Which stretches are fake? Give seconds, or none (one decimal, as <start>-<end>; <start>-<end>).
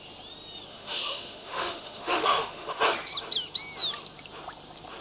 0.7-2.8